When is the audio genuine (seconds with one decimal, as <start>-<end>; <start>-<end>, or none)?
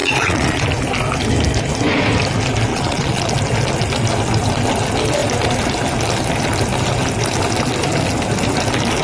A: 0.6-2.7; 3.3-9.0